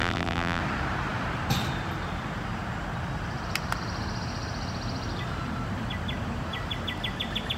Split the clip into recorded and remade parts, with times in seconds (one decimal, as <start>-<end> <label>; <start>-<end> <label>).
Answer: 0.0-0.6 remade; 0.6-7.6 recorded